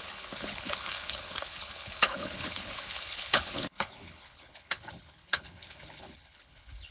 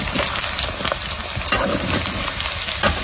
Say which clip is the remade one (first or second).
first